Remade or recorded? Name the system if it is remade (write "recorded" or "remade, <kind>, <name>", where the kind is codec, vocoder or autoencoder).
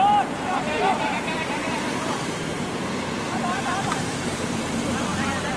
remade, vocoder, BigVGAN v2